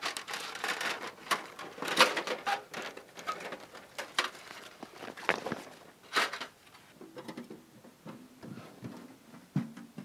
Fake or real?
real